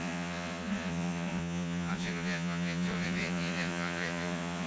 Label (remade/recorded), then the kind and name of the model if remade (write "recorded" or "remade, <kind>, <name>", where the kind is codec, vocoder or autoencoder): remade, vocoder, Vocos